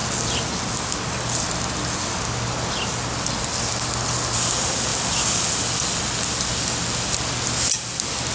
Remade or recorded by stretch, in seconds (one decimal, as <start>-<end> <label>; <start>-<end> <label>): 0.0-8.3 recorded